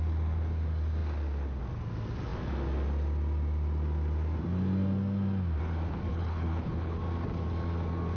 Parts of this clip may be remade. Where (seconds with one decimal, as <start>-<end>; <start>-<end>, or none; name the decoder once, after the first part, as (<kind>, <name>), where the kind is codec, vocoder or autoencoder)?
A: 6.1-7.0 (codec, HILCodec)